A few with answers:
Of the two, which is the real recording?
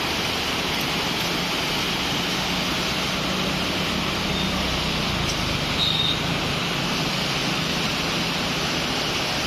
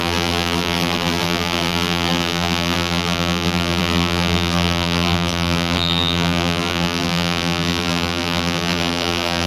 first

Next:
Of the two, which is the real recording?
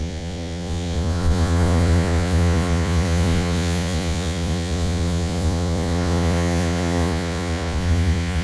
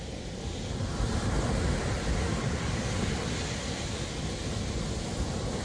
second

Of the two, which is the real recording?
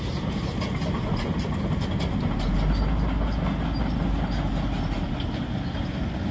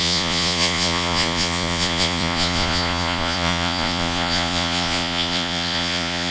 first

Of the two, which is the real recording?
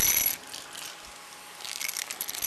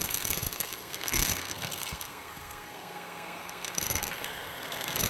first